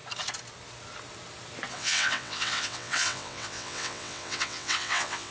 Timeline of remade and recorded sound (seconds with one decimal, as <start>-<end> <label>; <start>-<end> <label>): 0.0-1.7 recorded; 1.7-5.3 remade